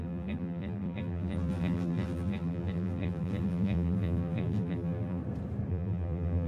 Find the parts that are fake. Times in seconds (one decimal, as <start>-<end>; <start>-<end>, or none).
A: 0.0-5.2; 5.7-6.5